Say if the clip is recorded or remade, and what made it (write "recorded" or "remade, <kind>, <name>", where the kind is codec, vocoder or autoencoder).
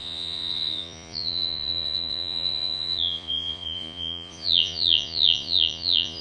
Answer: remade, vocoder, Vocos